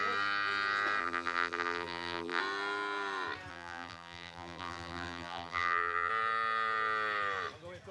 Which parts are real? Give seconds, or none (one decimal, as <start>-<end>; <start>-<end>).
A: 0.0-1.0; 2.4-3.5; 6.1-7.9